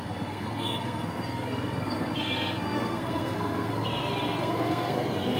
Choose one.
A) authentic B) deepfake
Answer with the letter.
B